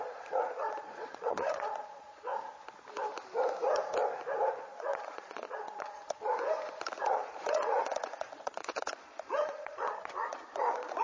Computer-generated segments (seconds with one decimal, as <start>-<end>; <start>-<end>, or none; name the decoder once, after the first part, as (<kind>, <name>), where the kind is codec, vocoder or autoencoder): 0.0-2.3 (vocoder, Vocos); 4.5-6.3; 7.0-11.0